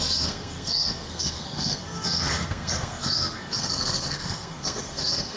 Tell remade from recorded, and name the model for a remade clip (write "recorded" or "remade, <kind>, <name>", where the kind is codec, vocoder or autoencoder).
remade, codec, SNAC